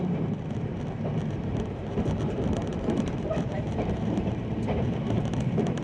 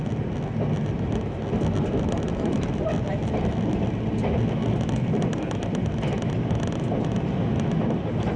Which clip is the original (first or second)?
second